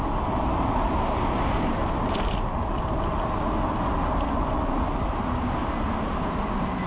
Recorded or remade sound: recorded